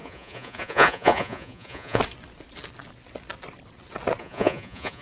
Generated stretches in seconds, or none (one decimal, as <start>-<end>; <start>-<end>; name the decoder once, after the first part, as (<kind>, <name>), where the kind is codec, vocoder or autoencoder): 0.0-2.0 (vocoder, Vocos); 4.2-5.0